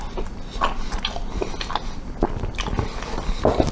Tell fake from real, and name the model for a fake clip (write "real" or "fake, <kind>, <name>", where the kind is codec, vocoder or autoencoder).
real